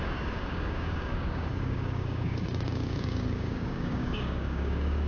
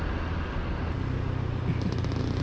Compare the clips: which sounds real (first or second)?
second